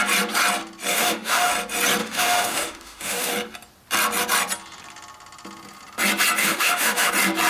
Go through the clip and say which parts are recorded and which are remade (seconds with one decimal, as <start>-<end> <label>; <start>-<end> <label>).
0.0-0.9 recorded; 0.9-1.5 remade; 1.5-2.0 recorded; 2.0-3.3 remade; 3.3-6.4 recorded; 6.4-7.1 remade; 7.1-7.5 recorded